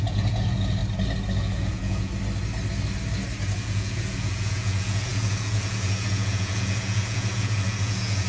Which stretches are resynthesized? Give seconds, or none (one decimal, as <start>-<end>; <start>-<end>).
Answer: 0.0-0.8; 1.4-2.1; 3.6-8.3